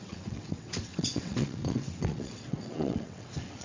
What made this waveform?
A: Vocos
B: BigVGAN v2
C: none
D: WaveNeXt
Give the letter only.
D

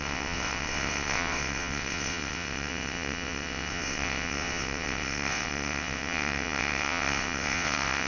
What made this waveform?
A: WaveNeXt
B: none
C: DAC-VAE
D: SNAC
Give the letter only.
A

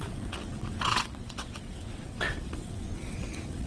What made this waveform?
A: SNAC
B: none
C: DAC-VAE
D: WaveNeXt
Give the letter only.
D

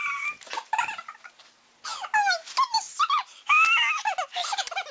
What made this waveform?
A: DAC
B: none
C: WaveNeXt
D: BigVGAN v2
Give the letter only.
B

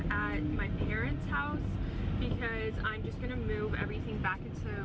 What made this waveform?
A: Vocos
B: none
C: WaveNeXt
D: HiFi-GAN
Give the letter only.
B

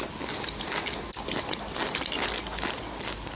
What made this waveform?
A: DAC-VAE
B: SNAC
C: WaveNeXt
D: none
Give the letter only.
D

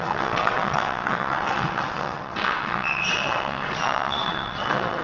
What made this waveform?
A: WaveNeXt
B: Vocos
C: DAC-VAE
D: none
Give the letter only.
A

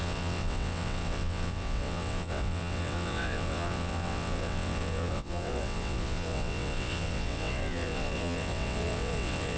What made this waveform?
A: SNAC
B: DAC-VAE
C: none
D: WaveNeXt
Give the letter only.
D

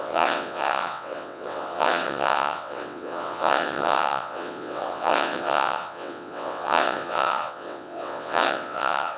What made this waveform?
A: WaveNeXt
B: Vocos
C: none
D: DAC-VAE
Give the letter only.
A